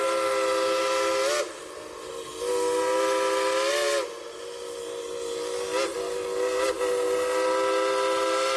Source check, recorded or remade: recorded